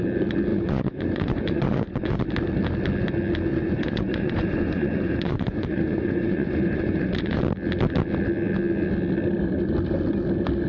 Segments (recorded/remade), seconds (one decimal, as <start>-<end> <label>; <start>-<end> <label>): 0.0-0.5 recorded; 0.5-2.2 remade; 2.2-3.5 recorded; 3.5-7.4 remade; 7.4-10.7 recorded